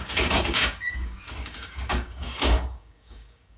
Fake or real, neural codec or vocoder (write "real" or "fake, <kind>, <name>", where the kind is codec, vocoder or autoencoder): fake, codec, DAC